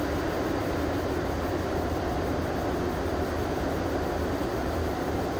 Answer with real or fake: real